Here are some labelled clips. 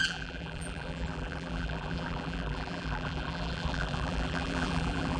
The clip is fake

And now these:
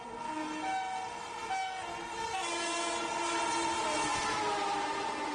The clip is real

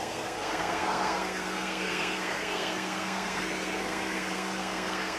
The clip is fake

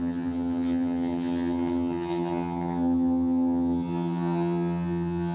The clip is fake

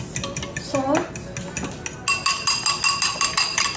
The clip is real